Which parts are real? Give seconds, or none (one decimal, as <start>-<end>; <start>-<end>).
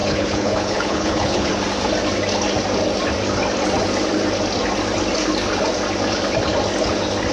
1.5-7.3